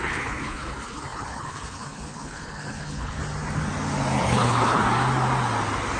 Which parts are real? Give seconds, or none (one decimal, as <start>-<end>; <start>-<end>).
3.2-4.2; 4.8-6.0